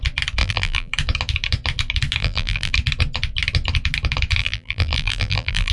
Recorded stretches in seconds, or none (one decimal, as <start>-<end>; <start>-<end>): 0.0-0.4; 0.9-2.2; 2.7-4.4